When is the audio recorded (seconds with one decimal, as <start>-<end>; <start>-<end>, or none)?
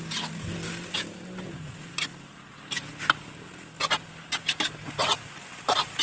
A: 0.0-6.0